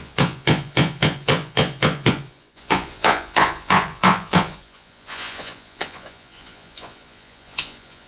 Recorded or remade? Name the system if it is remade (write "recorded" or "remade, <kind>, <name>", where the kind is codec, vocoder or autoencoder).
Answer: remade, vocoder, Vocos